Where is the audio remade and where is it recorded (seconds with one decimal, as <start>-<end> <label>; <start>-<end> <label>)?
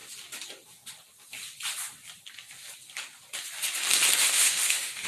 0.0-4.2 recorded; 4.2-5.1 remade